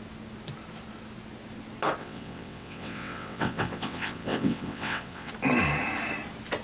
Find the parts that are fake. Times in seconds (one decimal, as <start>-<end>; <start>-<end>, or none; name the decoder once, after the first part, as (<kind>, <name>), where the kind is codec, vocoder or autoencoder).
2.0-5.3 (vocoder, WaveNeXt)